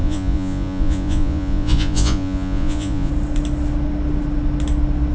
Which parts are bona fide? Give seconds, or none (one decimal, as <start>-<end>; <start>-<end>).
3.1-5.1